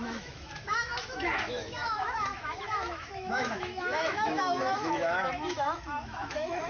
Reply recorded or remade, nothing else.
remade